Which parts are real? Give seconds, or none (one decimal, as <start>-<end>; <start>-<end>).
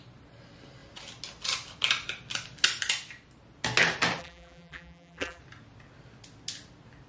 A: 0.0-4.2; 5.4-7.1